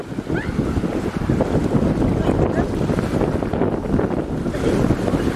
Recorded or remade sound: recorded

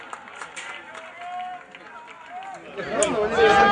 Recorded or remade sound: recorded